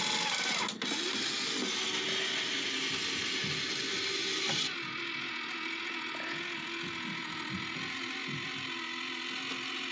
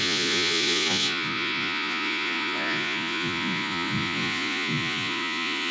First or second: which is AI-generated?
second